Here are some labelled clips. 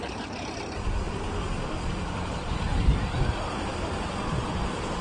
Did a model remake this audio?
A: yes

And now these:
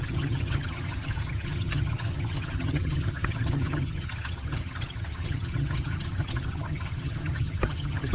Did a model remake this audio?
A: yes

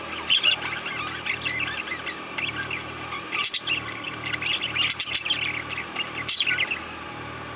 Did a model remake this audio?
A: no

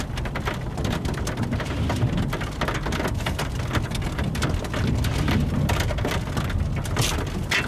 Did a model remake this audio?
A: no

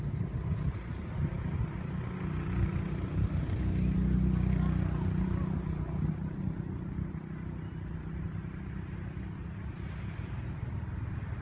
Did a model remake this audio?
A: no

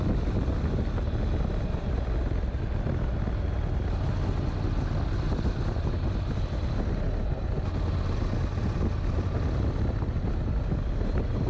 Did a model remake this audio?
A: no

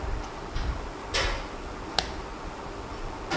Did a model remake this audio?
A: no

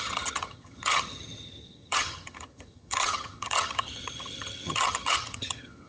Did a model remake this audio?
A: yes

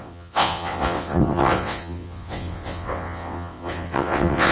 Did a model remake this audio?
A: yes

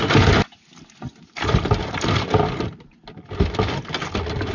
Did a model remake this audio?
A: no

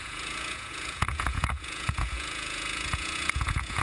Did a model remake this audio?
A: yes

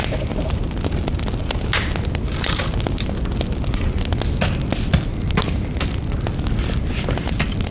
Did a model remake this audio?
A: no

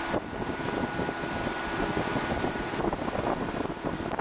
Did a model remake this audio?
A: no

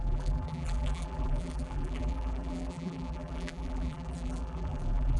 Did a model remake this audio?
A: yes